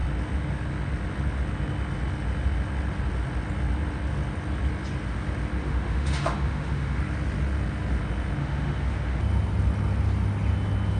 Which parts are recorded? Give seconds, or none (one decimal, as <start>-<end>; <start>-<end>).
0.0-5.6; 7.0-8.4; 9.2-11.0